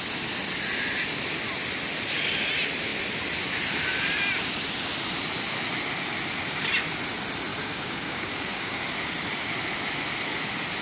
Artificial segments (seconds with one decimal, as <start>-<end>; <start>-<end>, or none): 7.5-8.8